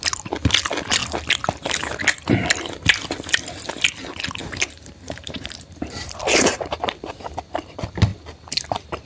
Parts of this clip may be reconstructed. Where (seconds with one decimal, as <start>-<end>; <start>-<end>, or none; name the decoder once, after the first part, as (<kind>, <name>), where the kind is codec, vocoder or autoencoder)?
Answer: 4.4-7.4 (vocoder, BigVGAN v2); 8.1-9.1